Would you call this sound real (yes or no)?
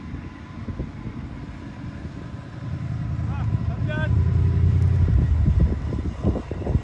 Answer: yes